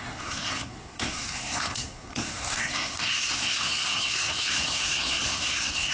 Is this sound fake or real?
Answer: fake